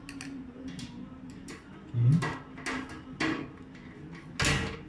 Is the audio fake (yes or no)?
no